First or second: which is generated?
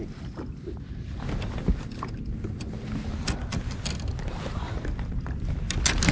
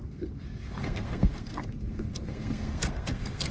second